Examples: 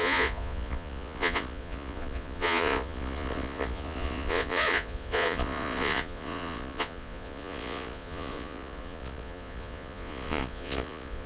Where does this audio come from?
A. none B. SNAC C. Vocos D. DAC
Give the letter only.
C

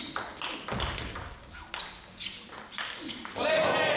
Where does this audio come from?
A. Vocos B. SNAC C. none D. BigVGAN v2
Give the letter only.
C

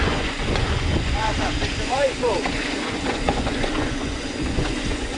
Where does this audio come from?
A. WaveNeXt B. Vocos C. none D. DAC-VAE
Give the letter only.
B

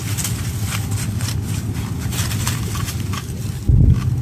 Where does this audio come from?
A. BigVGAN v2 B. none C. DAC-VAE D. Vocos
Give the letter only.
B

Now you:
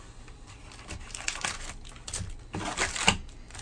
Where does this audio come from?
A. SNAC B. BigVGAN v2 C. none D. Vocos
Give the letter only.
C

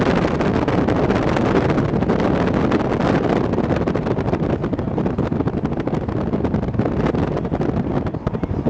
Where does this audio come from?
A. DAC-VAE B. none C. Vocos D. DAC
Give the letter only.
B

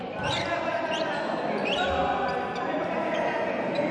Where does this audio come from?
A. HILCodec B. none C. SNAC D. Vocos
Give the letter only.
B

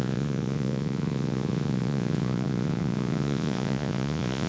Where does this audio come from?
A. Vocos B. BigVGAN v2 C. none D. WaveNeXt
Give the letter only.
A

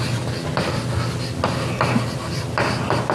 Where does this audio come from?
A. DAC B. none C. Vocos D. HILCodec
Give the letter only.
B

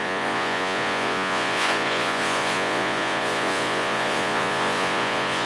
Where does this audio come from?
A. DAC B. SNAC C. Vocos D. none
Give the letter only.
C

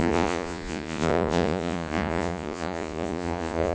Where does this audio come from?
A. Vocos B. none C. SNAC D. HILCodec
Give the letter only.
A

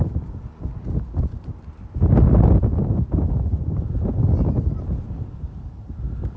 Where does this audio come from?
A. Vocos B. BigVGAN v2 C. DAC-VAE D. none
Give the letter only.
D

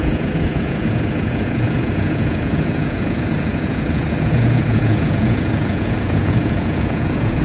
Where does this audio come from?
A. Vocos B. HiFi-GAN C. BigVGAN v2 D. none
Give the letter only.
A